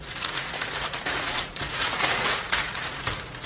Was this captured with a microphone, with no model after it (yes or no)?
no